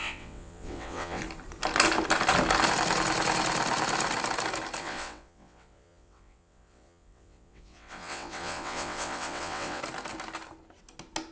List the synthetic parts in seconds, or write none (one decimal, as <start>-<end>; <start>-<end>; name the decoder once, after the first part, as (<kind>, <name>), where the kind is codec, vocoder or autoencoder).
0.0-1.2 (vocoder, WaveNeXt); 4.8-9.8